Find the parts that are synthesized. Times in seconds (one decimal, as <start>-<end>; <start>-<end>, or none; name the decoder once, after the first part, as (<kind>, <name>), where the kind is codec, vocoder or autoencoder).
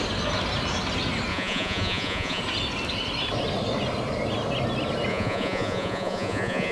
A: 1.3-2.4 (vocoder, Vocos); 5.1-6.7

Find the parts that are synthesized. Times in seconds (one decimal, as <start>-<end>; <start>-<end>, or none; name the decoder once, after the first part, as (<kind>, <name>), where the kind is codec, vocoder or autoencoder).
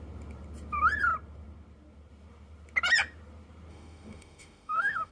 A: 3.7-5.1 (autoencoder, DAC-VAE)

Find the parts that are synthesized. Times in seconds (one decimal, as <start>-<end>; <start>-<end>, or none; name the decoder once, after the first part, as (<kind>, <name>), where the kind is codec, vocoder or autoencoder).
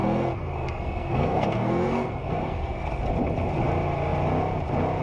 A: 0.0-3.0 (codec, SNAC)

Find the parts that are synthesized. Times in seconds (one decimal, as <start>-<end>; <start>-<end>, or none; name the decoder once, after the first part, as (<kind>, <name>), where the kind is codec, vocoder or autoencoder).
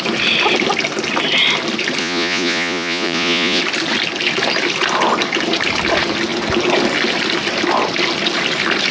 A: 2.0-3.6 (vocoder, Vocos)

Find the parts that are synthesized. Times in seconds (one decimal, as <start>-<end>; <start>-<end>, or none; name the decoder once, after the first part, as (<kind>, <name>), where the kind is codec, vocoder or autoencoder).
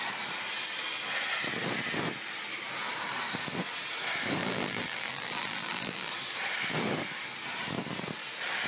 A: 4.4-6.1 (vocoder, BigVGAN v2)